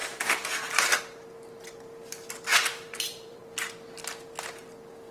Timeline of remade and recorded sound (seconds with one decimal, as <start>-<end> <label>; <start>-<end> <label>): 0.0-1.0 remade; 1.0-2.5 recorded; 2.5-3.4 remade; 3.4-5.1 recorded